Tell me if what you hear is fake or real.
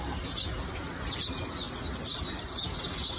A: real